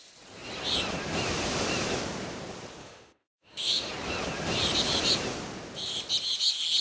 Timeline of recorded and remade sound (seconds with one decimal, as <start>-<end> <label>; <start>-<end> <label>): 0.0-2.8 recorded; 2.8-3.9 remade; 3.9-6.8 recorded